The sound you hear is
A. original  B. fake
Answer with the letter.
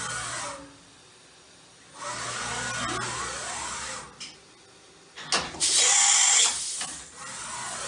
A